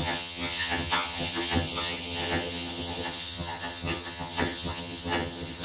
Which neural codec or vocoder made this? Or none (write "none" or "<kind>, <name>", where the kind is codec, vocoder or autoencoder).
vocoder, HiFi-GAN